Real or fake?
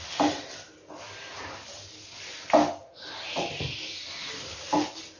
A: real